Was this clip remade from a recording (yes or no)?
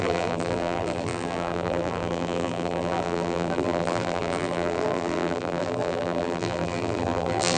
yes